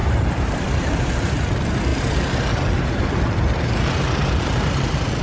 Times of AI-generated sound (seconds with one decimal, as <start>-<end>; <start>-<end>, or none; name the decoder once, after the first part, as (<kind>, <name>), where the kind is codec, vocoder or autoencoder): 0.0-1.3 (vocoder, BigVGAN v2); 1.9-5.2